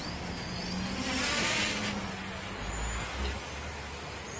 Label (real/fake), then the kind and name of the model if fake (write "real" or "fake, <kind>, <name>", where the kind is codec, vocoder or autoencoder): real